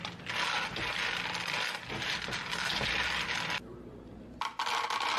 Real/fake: real